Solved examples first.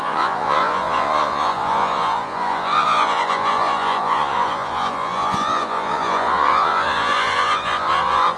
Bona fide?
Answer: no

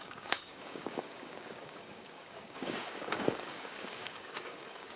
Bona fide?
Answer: no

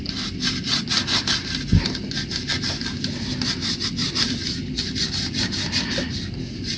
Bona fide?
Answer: yes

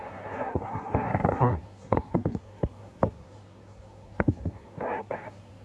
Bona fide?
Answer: no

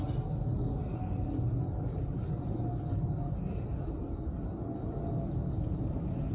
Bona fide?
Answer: yes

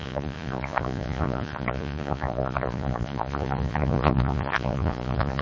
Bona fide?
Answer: no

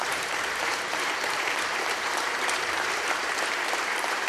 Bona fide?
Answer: no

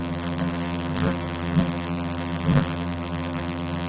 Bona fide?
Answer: no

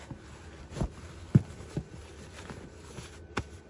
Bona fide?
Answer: yes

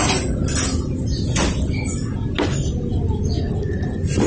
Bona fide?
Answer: yes